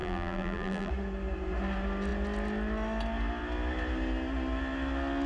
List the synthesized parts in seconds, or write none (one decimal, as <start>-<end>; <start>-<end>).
0.0-0.9